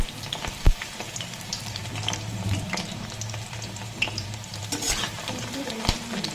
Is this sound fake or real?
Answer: fake